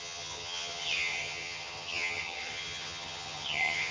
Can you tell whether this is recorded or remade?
remade